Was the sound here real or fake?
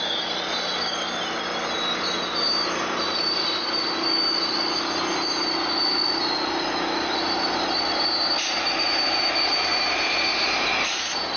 real